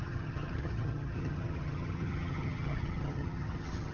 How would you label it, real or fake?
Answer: fake